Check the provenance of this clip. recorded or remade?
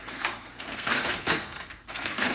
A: remade